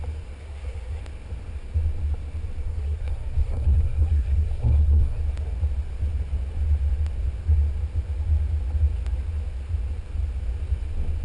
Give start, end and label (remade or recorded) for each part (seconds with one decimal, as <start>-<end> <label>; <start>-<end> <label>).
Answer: 0.0-0.4 recorded; 0.4-1.0 remade; 1.0-2.6 recorded; 2.6-5.2 remade; 5.2-11.2 recorded